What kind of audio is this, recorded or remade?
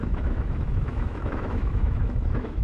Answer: remade